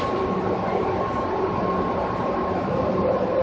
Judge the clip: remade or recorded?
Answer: remade